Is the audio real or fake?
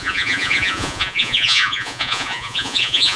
fake